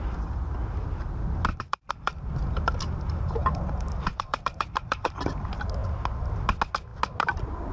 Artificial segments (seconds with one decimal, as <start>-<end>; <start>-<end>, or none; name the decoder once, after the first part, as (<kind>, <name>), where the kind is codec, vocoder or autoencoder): 1.5-5.2 (vocoder, BigVGAN v2)